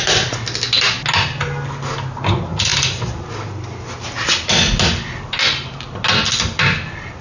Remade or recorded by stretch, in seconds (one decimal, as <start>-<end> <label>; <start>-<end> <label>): 0.0-7.2 recorded